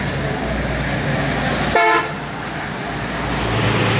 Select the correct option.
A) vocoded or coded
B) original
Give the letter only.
B